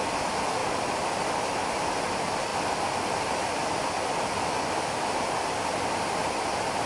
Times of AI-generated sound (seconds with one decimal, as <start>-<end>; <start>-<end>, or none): none